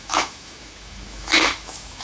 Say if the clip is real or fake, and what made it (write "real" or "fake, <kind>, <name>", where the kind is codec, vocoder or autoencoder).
fake, autoencoder, DAC-VAE